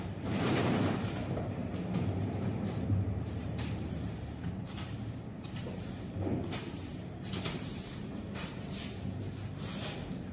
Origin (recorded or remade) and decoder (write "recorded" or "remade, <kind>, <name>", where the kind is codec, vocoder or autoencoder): remade, vocoder, BigVGAN v2